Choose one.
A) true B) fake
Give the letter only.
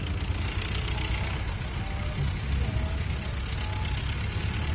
A